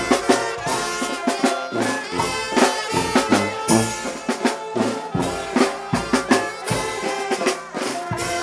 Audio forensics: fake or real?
real